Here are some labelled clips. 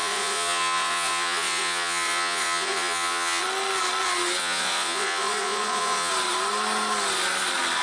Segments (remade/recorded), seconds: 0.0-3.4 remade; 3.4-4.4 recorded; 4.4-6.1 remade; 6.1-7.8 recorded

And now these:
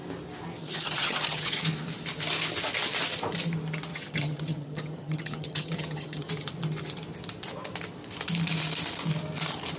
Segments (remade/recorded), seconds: 0.0-0.6 recorded; 0.6-1.6 remade; 1.6-3.9 recorded; 3.9-6.3 remade; 6.3-9.8 recorded

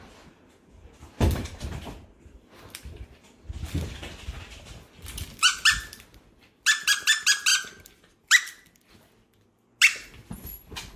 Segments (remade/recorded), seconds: 0.0-7.5 recorded; 7.5-8.9 remade; 8.9-11.0 recorded

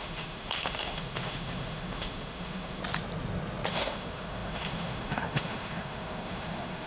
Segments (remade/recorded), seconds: 0.0-2.8 remade; 2.8-3.7 recorded; 3.7-6.9 remade

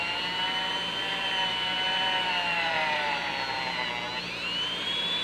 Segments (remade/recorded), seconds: 0.0-3.3 remade; 3.3-4.8 recorded; 4.8-5.2 remade

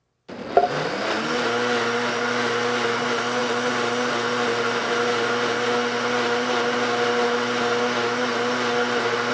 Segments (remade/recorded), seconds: 0.0-9.3 recorded

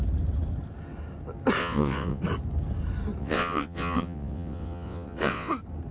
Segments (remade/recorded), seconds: 0.0-1.6 recorded; 1.6-2.2 remade; 2.2-3.2 recorded; 3.2-5.5 remade; 5.5-5.9 recorded

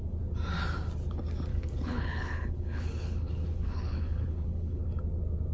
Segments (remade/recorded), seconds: 0.0-1.5 recorded; 1.5-4.8 remade; 4.8-5.5 recorded